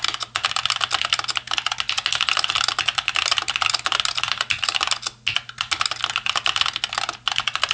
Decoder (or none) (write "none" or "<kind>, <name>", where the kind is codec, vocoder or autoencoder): none